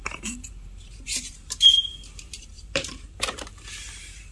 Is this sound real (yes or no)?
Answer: no